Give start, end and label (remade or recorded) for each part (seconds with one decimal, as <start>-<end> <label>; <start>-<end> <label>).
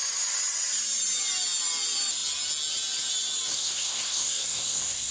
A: 0.0-3.5 recorded; 3.5-5.1 remade